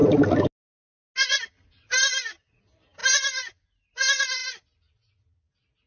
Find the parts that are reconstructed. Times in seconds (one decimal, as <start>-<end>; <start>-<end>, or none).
none